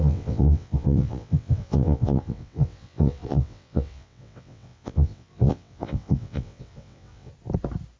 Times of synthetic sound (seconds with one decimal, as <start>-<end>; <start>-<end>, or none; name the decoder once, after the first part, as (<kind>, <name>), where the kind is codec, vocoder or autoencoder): 0.0-7.3 (vocoder, WaveNeXt)